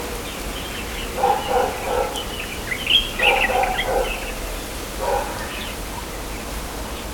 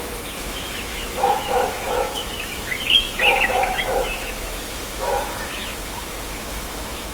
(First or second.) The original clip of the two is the first